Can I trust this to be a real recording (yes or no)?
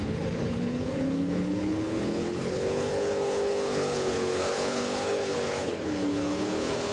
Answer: no